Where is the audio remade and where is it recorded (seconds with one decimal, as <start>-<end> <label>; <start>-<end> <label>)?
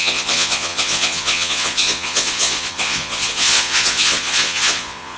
0.0-5.2 remade